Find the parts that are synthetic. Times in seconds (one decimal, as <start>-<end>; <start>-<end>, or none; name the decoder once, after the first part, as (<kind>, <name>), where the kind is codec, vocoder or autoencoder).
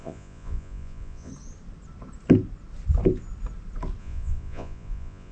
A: 0.0-1.3 (vocoder, Vocos); 4.0-5.3